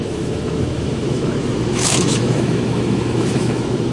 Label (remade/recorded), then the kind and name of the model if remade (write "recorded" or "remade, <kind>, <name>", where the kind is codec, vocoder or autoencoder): remade, autoencoder, DAC-VAE